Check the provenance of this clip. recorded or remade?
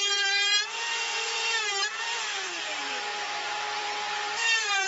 remade